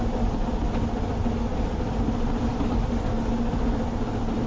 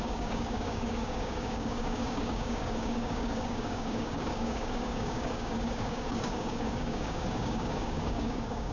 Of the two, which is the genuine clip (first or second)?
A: first